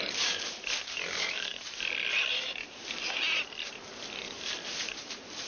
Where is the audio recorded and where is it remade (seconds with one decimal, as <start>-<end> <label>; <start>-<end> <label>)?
0.0-1.5 remade; 1.5-4.8 recorded; 4.8-5.5 remade